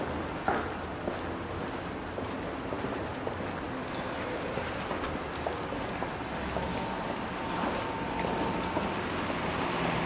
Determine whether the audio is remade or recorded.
recorded